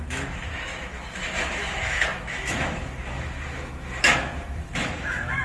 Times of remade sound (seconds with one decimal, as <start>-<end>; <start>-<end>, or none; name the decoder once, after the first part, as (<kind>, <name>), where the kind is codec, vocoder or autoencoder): 0.0-5.4 (autoencoder, DAC-VAE)